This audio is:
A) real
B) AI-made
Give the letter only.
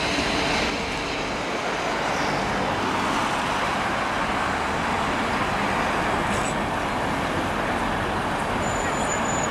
A